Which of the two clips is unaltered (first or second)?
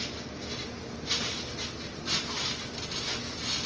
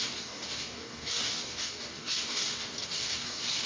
first